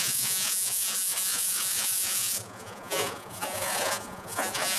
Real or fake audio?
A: fake